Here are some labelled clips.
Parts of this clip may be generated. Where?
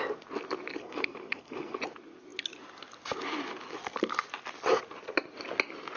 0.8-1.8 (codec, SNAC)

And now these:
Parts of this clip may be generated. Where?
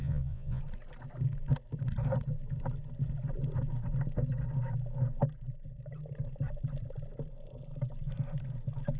0.0-0.6 (vocoder, Vocos)